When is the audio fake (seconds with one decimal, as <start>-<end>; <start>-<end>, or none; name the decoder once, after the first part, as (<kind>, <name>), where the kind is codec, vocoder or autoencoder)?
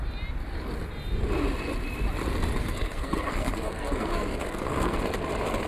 2.6-5.0 (codec, SNAC)